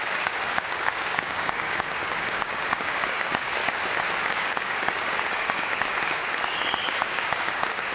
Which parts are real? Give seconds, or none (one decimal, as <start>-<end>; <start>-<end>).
3.6-4.3; 6.2-6.8